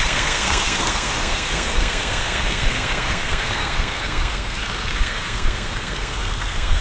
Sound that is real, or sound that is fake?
fake